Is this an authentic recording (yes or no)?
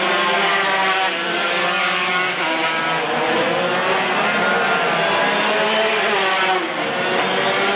yes